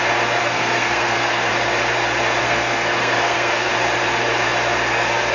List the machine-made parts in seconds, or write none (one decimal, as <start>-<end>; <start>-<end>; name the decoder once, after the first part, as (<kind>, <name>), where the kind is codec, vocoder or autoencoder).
0.4-1.5 (codec, SNAC); 2.4-3.7